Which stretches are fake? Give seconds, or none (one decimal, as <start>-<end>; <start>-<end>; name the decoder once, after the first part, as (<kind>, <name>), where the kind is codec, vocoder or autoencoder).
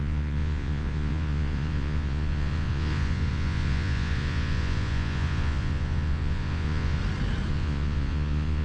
0.0-7.0 (vocoder, Vocos); 7.5-8.6